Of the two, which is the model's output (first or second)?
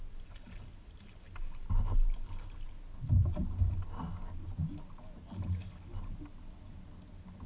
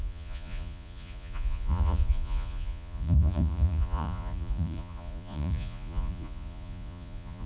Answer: second